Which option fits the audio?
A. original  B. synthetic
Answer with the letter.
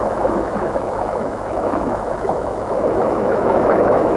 B